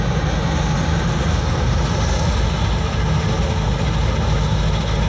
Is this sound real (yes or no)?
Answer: yes